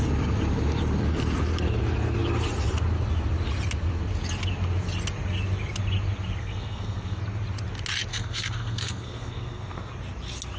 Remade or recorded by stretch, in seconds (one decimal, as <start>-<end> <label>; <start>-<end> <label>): 0.0-6.4 recorded; 6.4-7.2 remade; 7.2-8.1 recorded; 8.1-9.9 remade; 9.9-10.6 recorded